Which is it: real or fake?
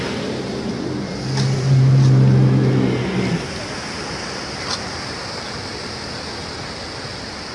real